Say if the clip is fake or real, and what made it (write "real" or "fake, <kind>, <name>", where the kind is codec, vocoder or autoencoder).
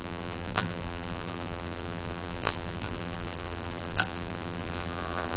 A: fake, vocoder, BigVGAN v2